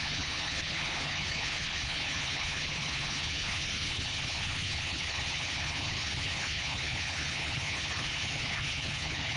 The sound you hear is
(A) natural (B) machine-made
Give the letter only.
B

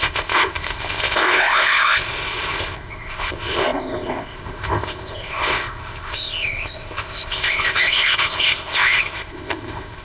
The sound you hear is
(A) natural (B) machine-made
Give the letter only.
B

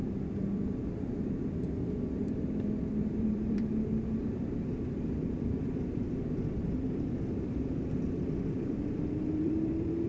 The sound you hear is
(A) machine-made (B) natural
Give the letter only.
A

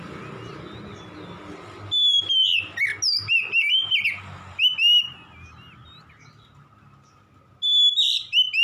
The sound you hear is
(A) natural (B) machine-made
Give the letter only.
A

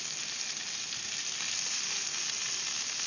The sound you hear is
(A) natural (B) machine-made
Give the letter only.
A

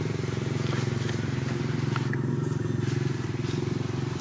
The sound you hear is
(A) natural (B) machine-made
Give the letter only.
A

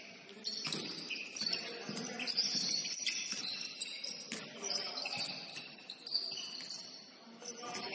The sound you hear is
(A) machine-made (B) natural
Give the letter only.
B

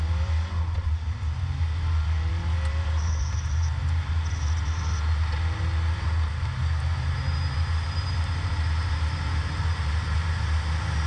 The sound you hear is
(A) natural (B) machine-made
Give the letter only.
A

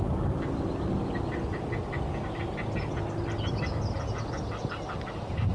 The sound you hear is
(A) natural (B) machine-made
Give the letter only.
A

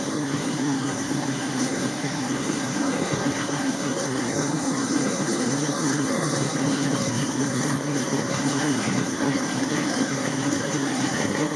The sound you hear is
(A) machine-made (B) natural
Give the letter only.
A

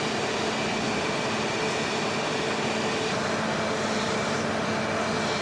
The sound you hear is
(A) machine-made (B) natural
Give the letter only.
B